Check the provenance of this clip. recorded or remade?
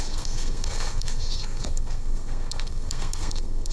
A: remade